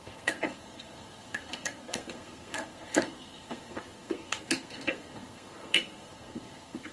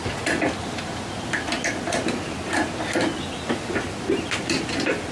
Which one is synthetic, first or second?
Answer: first